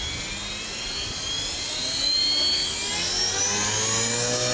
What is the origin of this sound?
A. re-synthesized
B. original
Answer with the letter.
B